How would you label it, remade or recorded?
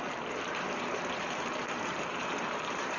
remade